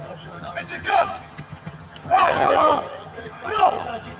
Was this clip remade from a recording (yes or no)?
yes